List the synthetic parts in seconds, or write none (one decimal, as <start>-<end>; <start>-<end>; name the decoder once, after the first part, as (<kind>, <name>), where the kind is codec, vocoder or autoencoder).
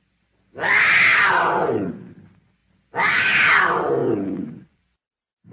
1.1-2.0 (vocoder, Vocos); 4.0-4.8